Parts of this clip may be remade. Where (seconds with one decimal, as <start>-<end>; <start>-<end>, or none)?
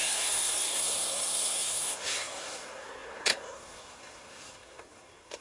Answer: 0.0-5.4